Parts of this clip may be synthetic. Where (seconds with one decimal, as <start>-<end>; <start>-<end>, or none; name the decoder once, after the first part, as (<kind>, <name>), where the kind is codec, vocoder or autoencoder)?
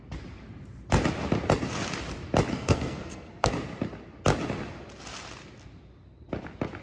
2.5-3.5 (codec, SNAC)